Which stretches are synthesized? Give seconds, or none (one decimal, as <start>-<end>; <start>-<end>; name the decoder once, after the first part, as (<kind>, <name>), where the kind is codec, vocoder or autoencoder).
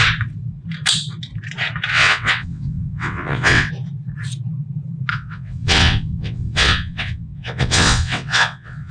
1.9-3.7 (vocoder, WaveNeXt); 5.1-8.9